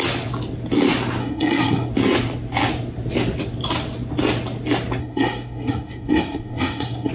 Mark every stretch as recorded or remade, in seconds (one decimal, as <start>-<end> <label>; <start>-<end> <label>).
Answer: 0.0-1.2 recorded; 1.2-1.9 remade; 1.9-5.0 recorded; 5.0-7.1 remade